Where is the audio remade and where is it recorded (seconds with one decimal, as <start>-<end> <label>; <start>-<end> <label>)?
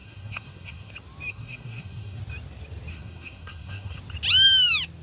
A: 0.0-0.9 remade; 0.9-1.3 recorded; 1.3-2.2 remade; 2.2-2.9 recorded; 2.9-4.0 remade; 4.0-5.0 recorded